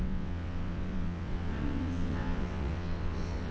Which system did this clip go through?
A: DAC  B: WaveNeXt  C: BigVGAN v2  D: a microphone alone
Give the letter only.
B